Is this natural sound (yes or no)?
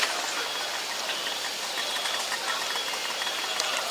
yes